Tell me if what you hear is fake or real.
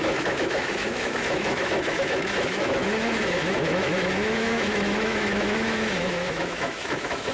fake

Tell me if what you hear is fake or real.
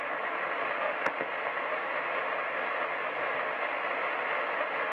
real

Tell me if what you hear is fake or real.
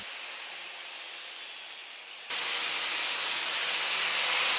real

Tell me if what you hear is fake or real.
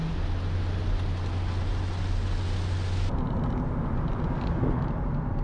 real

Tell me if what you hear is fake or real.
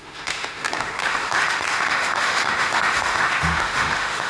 fake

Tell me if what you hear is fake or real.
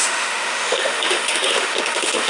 fake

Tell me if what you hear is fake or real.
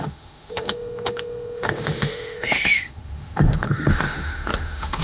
fake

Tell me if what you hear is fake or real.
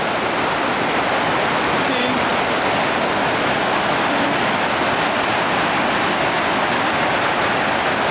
real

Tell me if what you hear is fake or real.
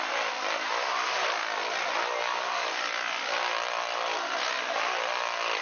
real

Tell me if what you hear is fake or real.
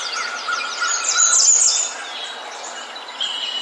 real